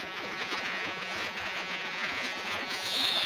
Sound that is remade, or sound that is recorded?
remade